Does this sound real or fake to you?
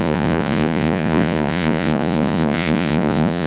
fake